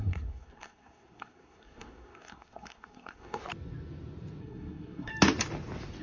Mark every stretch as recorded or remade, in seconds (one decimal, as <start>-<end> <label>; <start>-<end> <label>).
0.0-3.4 remade; 3.4-4.4 recorded; 4.4-5.1 remade; 5.1-6.0 recorded